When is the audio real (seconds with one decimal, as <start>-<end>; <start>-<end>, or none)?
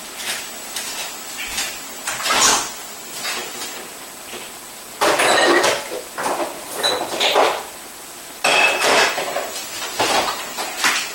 0.0-8.5; 9.1-11.1